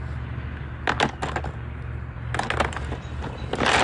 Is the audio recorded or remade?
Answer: recorded